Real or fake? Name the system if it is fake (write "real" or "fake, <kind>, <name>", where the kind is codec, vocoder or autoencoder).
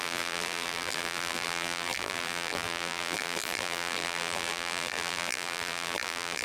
fake, vocoder, BigVGAN v2